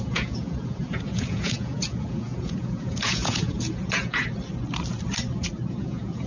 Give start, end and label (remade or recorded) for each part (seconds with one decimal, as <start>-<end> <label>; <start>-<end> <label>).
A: 0.0-4.2 remade; 4.2-5.7 recorded; 5.7-6.3 remade

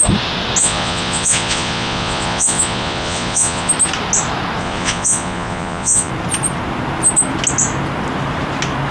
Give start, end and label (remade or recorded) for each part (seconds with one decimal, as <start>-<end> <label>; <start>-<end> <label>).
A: 0.0-0.6 recorded; 0.6-3.7 remade; 3.7-4.6 recorded; 4.6-6.1 remade; 6.1-8.9 recorded

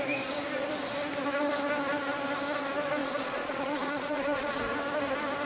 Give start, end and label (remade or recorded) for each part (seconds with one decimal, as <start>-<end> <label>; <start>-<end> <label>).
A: 0.0-3.0 recorded; 3.0-4.6 remade; 4.6-5.5 recorded

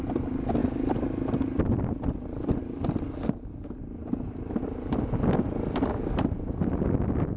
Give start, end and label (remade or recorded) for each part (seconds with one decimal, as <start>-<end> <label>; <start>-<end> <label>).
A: 0.0-7.4 recorded

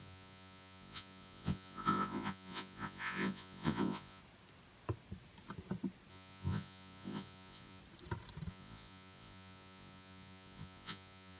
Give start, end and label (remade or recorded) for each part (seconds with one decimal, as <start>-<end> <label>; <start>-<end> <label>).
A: 0.0-4.2 remade; 4.2-6.1 recorded; 6.1-7.8 remade; 7.8-8.5 recorded; 8.5-11.4 remade

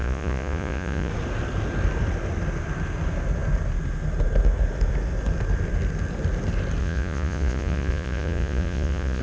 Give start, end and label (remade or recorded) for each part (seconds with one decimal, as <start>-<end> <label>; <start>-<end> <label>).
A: 0.0-1.1 remade; 1.1-6.8 recorded; 6.8-9.2 remade